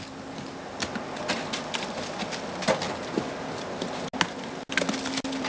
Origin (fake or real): real